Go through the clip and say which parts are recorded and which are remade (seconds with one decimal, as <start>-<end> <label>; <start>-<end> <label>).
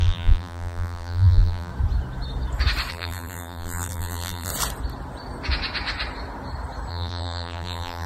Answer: 0.0-1.7 remade; 1.7-2.9 recorded; 2.9-4.5 remade; 4.5-6.9 recorded; 6.9-8.1 remade